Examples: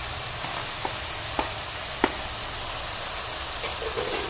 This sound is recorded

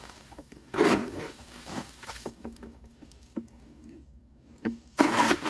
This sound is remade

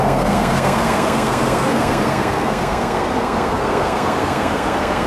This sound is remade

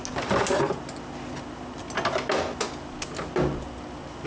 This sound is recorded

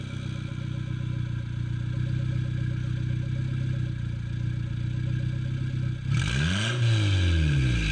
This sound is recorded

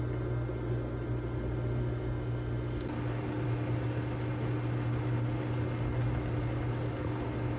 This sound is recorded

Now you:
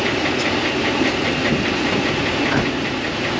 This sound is recorded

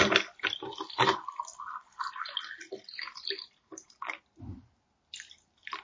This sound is recorded